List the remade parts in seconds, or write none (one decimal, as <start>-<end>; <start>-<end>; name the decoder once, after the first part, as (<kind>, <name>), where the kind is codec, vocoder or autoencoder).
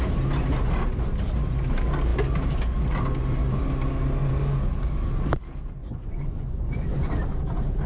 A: 5.8-7.1 (vocoder, Vocos)